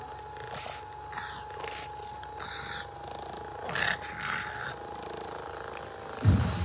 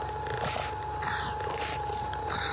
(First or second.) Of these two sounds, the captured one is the first